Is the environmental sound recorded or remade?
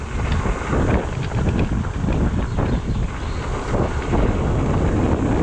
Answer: recorded